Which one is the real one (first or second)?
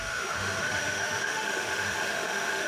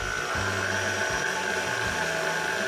second